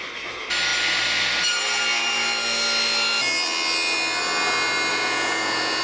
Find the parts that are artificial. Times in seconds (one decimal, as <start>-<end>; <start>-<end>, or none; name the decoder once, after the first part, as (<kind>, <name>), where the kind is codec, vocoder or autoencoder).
4.9-5.8 (vocoder, Vocos)